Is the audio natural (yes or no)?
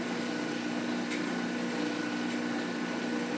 yes